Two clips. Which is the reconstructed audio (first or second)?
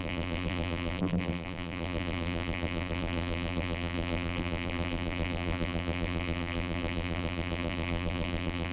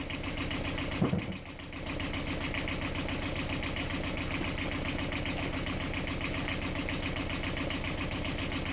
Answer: first